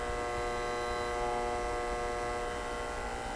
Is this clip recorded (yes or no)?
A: yes